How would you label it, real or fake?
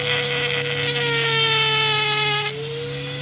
real